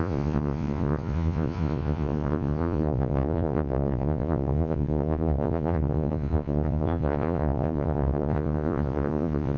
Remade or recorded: remade